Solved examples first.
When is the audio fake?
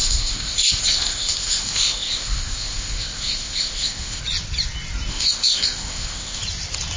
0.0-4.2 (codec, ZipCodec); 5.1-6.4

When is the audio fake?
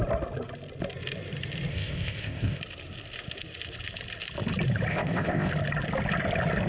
1.7-2.6 (codec, ZipCodec); 4.9-5.5